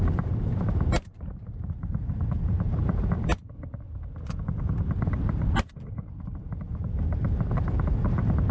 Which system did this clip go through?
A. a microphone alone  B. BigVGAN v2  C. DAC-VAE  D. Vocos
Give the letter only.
B